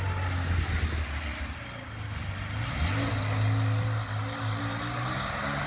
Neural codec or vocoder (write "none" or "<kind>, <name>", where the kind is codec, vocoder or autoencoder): none